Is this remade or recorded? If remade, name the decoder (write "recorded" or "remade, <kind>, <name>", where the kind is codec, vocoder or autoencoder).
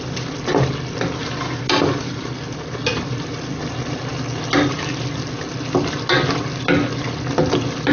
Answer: recorded